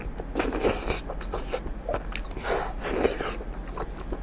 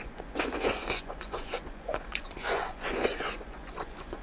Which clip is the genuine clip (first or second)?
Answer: first